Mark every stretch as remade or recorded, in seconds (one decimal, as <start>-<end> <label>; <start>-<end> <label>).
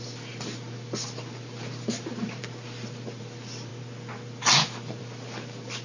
0.0-2.4 remade; 2.4-3.2 recorded; 3.2-3.7 remade; 3.7-5.0 recorded; 5.0-5.8 remade